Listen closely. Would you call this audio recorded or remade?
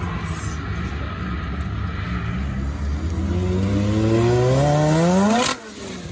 recorded